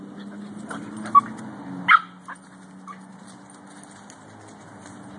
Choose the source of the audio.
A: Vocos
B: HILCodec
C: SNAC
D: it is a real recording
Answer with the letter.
D